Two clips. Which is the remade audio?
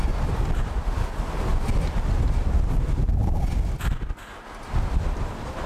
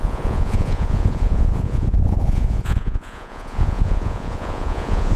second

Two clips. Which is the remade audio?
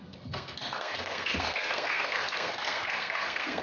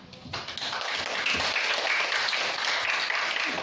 first